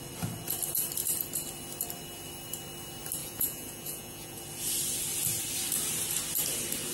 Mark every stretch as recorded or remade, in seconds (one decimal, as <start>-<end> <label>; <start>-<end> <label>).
0.0-3.2 recorded; 3.2-4.4 remade; 4.4-6.9 recorded